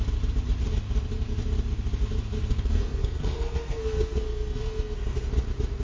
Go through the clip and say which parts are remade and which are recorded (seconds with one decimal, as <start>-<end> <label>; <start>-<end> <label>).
0.0-2.5 recorded; 2.5-5.3 remade; 5.3-5.8 recorded